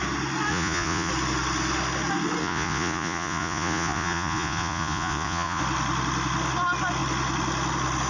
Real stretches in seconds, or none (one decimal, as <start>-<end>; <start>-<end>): 0.0-0.5; 1.1-2.4; 5.6-8.1